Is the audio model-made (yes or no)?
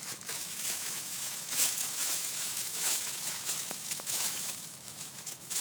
yes